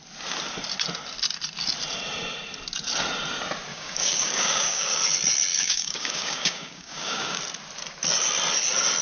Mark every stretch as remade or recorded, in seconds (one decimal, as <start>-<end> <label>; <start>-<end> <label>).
0.0-3.7 recorded; 3.7-5.0 remade; 5.0-5.5 recorded; 5.5-7.4 remade; 7.4-9.0 recorded